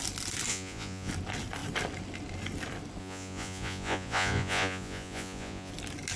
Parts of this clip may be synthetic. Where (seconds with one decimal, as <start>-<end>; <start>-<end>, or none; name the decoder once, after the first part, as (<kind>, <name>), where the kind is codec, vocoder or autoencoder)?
0.5-1.1 (vocoder, Vocos); 3.0-5.7